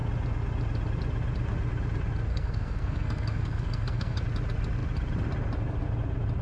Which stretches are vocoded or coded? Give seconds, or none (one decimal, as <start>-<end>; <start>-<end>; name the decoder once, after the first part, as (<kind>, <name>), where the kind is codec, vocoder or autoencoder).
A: 2.3-4.2 (codec, SNAC)